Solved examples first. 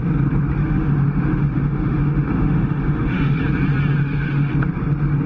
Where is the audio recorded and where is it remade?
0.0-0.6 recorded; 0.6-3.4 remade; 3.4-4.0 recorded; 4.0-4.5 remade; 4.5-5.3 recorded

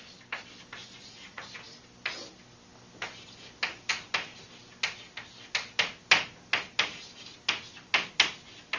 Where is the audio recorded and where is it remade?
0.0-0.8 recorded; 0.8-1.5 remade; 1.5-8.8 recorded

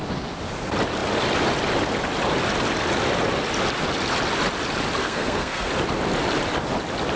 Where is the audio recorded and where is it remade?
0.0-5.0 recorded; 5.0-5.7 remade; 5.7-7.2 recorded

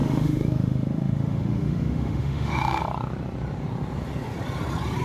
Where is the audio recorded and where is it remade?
0.0-2.8 remade; 2.8-5.0 recorded